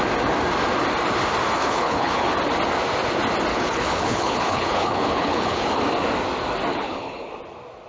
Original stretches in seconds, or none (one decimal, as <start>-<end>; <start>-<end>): 0.0-1.6; 2.3-3.5; 5.8-6.7; 7.3-7.9